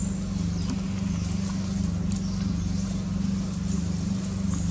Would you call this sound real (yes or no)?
yes